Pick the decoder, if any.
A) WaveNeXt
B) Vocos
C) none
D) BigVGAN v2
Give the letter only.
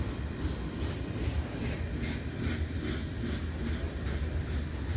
C